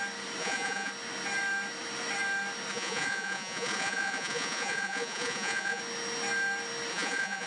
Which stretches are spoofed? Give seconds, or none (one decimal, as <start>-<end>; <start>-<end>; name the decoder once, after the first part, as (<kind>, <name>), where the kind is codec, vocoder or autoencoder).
0.4-0.9 (vocoder, Vocos); 2.7-5.8; 6.9-7.5